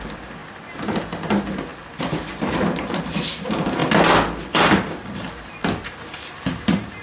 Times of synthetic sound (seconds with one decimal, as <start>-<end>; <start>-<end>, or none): 0.0-0.4; 1.2-3.8; 4.4-7.0